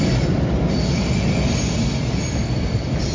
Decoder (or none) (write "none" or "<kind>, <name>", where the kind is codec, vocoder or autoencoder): none